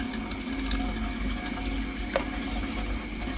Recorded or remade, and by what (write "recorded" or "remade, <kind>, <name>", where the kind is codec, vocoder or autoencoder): recorded